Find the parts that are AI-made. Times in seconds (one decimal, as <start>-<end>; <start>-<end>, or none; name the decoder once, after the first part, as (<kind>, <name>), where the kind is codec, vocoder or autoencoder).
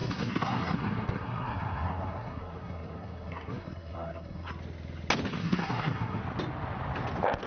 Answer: 0.0-4.5 (codec, SNAC); 5.4-6.2